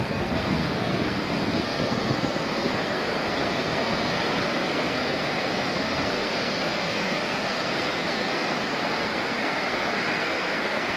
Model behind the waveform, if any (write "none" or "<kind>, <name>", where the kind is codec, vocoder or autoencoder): codec, SNAC